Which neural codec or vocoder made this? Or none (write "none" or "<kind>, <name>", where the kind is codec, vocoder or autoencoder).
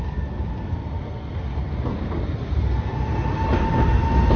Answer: none